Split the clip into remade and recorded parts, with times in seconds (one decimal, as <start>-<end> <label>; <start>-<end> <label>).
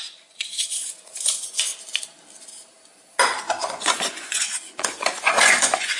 0.0-1.7 remade; 1.7-3.6 recorded; 3.6-6.0 remade